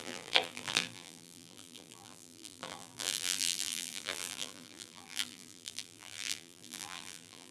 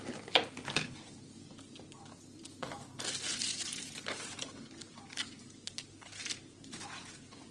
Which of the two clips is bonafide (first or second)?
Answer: second